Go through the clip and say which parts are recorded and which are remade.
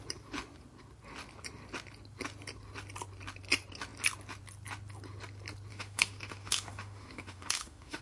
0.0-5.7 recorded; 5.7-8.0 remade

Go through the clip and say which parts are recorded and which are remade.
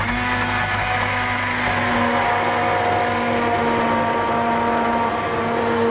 0.0-5.9 recorded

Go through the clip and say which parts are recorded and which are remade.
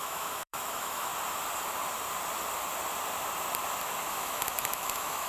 0.0-1.1 remade; 1.1-4.1 recorded; 4.1-5.3 remade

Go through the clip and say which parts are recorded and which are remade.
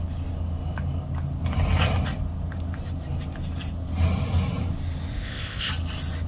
0.0-5.1 recorded; 5.1-5.7 remade; 5.7-6.3 recorded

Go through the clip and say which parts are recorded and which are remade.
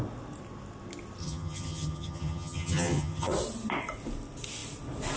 0.0-1.2 recorded; 1.2-3.3 remade; 3.3-5.2 recorded